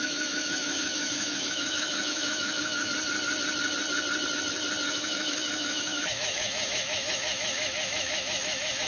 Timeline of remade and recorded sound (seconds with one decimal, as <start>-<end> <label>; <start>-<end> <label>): 0.0-2.9 remade; 2.9-4.9 recorded; 4.9-8.9 remade